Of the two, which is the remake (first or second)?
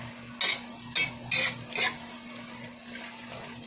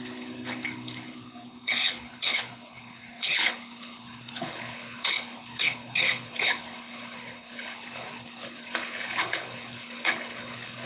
second